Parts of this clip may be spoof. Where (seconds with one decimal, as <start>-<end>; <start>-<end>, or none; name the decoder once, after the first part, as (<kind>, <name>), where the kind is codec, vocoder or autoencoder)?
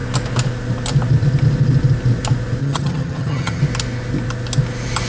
2.6-3.6 (vocoder, HiFi-GAN)